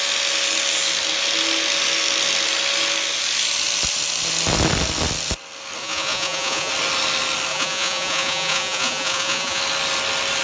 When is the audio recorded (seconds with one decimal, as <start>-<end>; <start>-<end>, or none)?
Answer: 0.0-5.8; 6.7-7.5; 9.6-10.4